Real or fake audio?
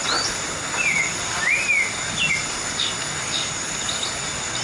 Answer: real